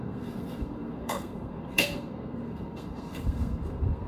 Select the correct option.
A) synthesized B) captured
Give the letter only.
A